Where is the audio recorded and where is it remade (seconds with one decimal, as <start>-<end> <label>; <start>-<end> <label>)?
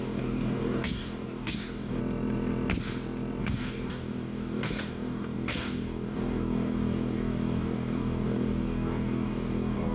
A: 0.0-2.0 remade; 2.0-3.4 recorded; 3.4-9.9 remade